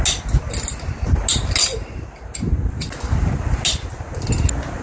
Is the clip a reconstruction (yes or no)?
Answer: no